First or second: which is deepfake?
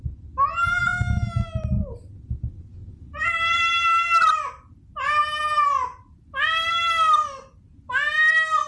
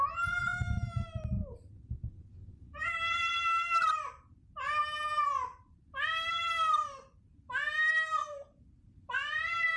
second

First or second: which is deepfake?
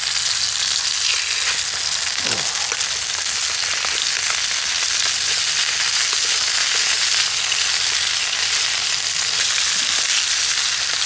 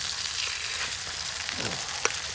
second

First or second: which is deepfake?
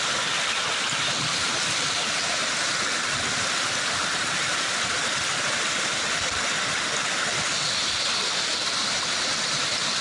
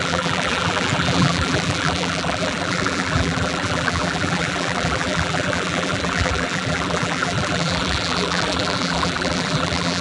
second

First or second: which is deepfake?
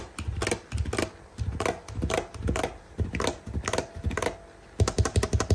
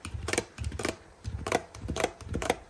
second